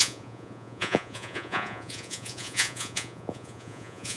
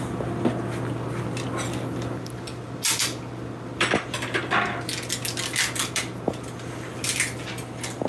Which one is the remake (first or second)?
first